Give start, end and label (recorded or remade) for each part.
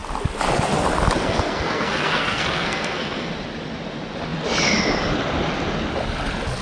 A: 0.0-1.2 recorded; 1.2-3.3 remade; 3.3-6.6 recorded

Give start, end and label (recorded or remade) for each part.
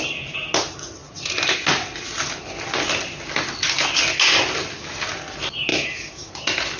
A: 0.0-5.7 recorded; 5.7-6.3 remade; 6.3-6.8 recorded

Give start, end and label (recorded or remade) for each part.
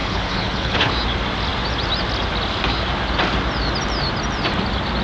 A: 0.0-0.9 remade; 0.9-5.0 recorded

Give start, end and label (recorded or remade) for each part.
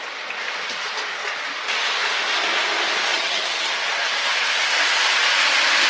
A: 0.0-3.1 recorded; 3.1-3.7 remade; 3.7-5.9 recorded